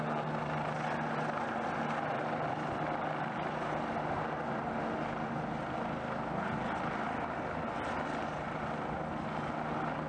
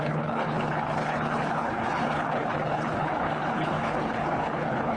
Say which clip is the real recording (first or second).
first